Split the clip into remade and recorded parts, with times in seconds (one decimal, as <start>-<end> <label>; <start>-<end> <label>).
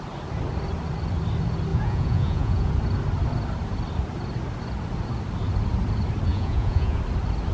0.0-1.7 recorded; 1.7-2.7 remade; 2.7-6.3 recorded; 6.3-7.0 remade; 7.0-7.5 recorded